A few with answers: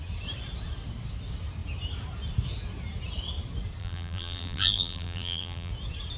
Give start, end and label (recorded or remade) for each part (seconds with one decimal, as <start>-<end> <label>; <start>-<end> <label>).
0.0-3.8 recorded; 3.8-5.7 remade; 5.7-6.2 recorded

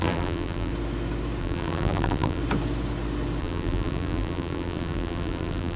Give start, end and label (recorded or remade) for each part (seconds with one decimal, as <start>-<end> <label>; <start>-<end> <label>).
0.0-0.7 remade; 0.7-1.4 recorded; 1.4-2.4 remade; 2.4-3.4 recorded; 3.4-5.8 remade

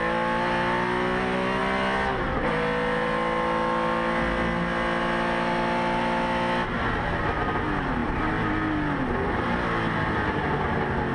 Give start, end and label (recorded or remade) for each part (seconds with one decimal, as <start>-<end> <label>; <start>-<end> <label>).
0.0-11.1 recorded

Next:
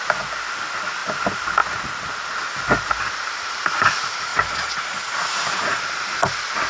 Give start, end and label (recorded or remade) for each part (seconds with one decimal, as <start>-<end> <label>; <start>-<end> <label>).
0.0-4.3 recorded; 4.3-5.8 remade; 5.8-6.7 recorded

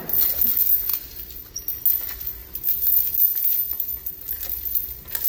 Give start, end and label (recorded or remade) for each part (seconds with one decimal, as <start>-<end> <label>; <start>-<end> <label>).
0.0-5.3 recorded

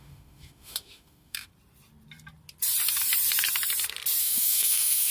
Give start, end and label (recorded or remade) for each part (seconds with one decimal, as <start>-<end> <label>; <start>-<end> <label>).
0.0-1.5 remade; 1.5-4.2 recorded; 4.2-5.1 remade

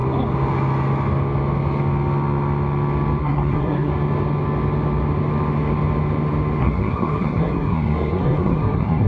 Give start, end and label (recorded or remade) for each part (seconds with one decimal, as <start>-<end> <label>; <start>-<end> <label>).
0.0-3.2 recorded; 3.2-3.9 remade; 3.9-6.6 recorded; 6.6-9.1 remade

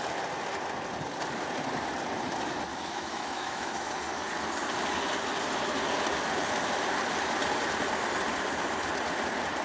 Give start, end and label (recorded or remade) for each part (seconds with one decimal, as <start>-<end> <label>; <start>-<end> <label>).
0.0-2.7 recorded; 2.7-3.9 remade; 3.9-9.6 recorded